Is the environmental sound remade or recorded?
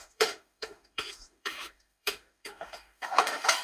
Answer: remade